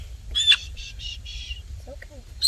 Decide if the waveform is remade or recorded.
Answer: remade